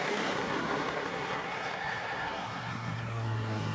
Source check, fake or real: fake